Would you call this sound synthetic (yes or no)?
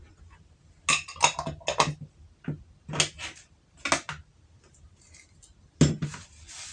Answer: no